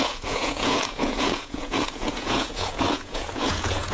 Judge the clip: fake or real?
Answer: fake